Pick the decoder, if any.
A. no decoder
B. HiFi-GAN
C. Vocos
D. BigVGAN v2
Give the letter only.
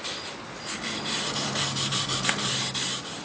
D